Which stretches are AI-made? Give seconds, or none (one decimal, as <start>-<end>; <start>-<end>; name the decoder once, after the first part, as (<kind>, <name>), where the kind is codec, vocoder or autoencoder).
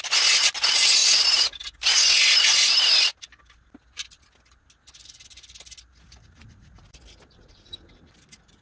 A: none